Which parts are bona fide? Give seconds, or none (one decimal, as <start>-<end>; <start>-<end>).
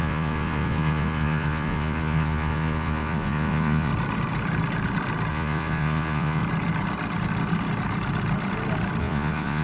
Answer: 3.9-5.3; 6.4-9.0